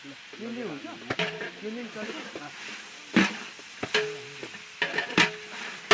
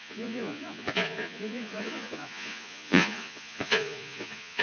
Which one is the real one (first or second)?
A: first